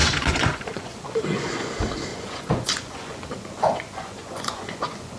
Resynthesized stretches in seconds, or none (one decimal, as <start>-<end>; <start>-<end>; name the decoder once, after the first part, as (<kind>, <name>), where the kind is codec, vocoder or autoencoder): 0.0-1.7 (vocoder, Vocos); 2.1-5.2